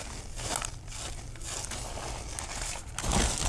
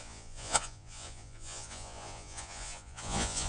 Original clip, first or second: first